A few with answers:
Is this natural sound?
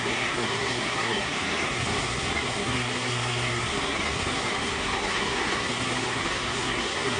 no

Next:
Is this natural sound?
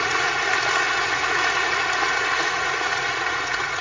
no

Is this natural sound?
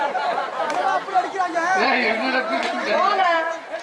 yes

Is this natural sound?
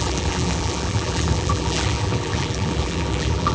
no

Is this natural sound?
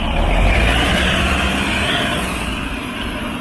yes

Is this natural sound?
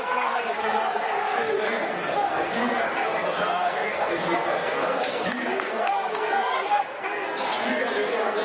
no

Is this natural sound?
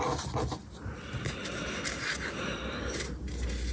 yes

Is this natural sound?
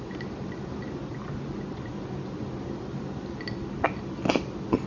yes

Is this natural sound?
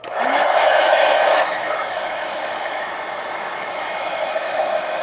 no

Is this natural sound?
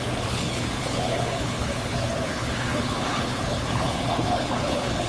no